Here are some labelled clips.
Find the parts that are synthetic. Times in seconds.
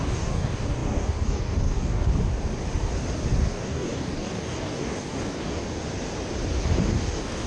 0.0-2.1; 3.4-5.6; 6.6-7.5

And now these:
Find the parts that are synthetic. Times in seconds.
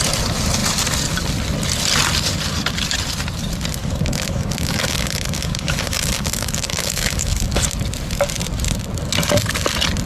3.8-7.6